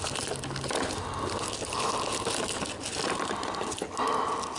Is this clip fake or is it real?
real